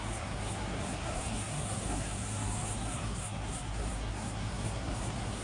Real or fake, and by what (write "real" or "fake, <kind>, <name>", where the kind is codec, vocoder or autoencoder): fake, codec, SNAC